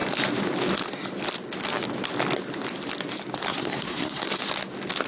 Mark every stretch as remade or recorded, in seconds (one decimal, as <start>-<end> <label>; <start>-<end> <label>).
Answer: 0.0-3.5 recorded; 3.5-4.3 remade; 4.3-5.1 recorded